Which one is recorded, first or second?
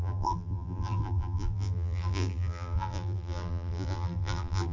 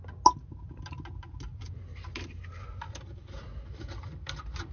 second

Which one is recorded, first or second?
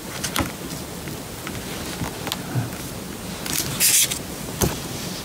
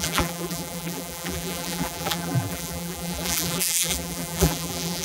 first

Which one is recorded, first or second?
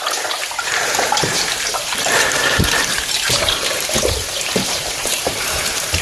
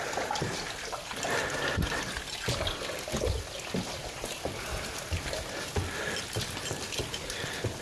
second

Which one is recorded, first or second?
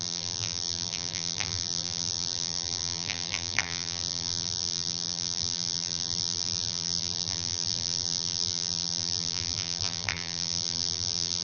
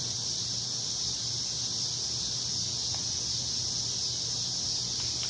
second